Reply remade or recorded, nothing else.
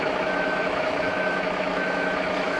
remade